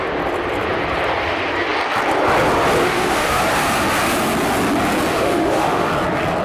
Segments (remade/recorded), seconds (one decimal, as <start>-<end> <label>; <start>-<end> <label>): 0.0-2.8 recorded; 2.8-3.4 remade; 3.4-5.1 recorded; 5.1-5.9 remade; 5.9-6.4 recorded